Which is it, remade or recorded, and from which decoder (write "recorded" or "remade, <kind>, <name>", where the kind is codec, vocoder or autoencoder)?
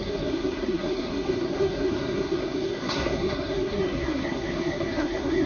remade, codec, SNAC